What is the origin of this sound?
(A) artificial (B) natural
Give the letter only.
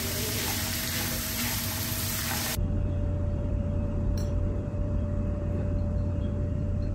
A